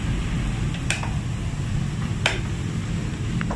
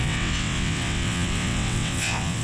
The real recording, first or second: first